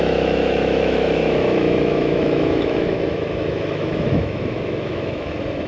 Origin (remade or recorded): remade